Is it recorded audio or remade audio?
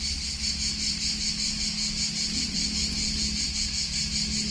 recorded